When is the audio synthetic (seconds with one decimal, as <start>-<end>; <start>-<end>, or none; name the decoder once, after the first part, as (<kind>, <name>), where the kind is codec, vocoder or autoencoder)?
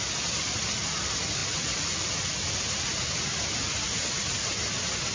none